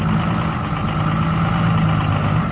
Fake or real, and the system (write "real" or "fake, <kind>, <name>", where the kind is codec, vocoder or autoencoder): real